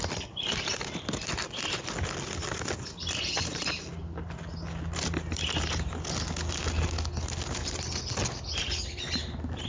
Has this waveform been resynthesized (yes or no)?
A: no